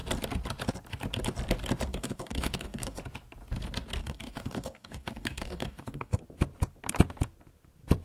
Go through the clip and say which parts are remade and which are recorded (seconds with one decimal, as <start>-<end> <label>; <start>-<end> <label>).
0.0-1.9 recorded; 1.9-3.0 remade; 3.0-4.0 recorded; 4.0-6.2 remade; 6.2-8.0 recorded